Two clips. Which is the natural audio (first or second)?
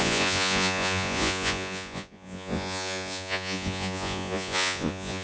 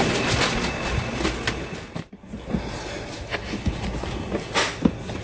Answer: second